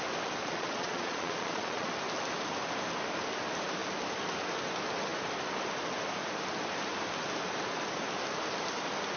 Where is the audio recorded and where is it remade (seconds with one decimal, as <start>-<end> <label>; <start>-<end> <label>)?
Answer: 0.0-0.4 recorded; 0.4-1.9 remade; 1.9-9.2 recorded